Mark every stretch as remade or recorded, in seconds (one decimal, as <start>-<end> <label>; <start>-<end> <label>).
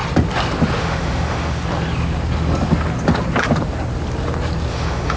0.0-0.8 recorded; 0.8-1.6 remade; 1.6-4.7 recorded; 4.7-5.2 remade